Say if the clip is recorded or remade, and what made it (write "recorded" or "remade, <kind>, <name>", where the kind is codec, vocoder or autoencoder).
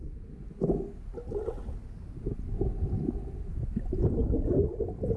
recorded